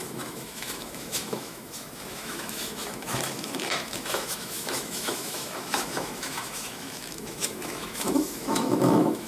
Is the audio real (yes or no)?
no